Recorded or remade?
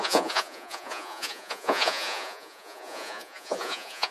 remade